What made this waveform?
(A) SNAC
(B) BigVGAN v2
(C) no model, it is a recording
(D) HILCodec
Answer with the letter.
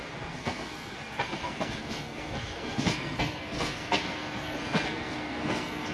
A